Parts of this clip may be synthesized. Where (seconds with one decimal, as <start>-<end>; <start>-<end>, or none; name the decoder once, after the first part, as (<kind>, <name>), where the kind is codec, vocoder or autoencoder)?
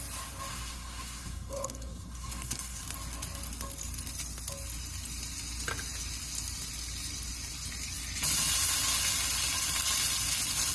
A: 0.5-2.8 (codec, SNAC)